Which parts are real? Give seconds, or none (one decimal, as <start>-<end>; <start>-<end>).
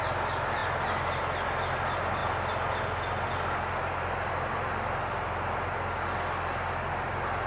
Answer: 0.0-7.5